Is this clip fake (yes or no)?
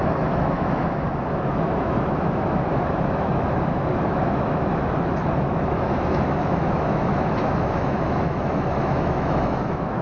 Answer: yes